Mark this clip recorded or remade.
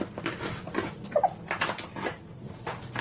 recorded